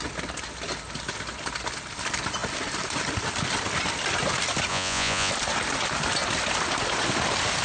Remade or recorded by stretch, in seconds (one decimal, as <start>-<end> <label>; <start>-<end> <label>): 0.0-4.7 recorded; 4.7-5.3 remade; 5.3-7.6 recorded

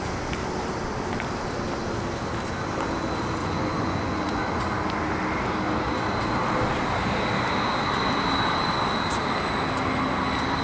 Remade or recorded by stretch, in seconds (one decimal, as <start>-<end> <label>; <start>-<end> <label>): 0.0-3.4 recorded; 3.4-4.4 remade; 4.4-10.6 recorded

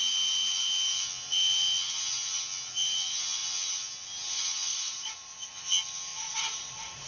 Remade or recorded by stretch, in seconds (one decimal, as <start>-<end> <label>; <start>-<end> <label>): 0.0-4.7 recorded; 4.7-5.5 remade; 5.5-6.1 recorded; 6.1-7.1 remade

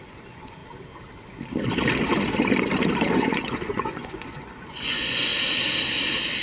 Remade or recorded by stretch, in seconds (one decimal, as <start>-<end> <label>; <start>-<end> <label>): 0.0-0.6 remade; 0.6-3.1 recorded; 3.1-5.3 remade; 5.3-6.4 recorded

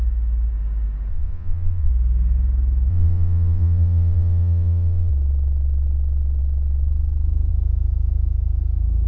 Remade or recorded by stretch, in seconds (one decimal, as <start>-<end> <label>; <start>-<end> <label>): 0.0-1.1 recorded; 1.1-1.9 remade; 1.9-2.9 recorded; 2.9-5.1 remade; 5.1-9.1 recorded